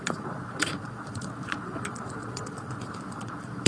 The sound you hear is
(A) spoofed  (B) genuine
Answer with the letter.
A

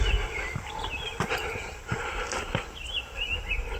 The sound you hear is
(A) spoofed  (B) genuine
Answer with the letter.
B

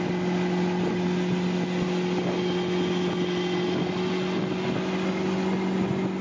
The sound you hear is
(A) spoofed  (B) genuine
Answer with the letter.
B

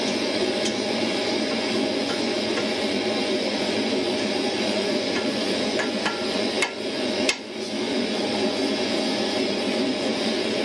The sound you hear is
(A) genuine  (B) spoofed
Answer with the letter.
B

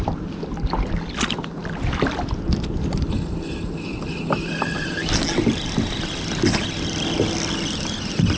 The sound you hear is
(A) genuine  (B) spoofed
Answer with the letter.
A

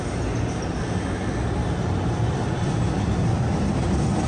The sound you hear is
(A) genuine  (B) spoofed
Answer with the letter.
A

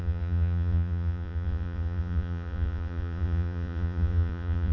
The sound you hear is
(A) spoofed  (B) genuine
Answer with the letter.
A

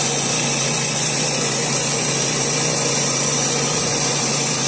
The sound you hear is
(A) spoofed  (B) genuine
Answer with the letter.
A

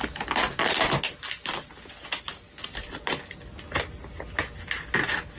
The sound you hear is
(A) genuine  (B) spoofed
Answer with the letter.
A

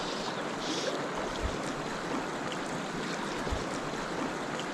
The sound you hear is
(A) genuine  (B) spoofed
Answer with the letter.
A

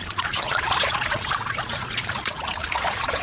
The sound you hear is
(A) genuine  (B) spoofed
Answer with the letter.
B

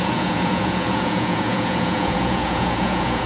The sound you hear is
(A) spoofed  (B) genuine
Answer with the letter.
A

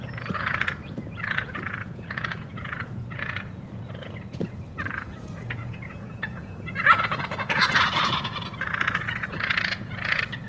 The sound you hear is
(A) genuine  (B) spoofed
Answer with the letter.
B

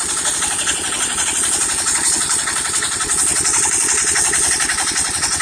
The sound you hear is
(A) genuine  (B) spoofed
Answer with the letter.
B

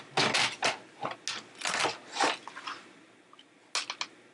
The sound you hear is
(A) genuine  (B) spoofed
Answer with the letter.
A